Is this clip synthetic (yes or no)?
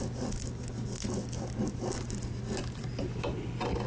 no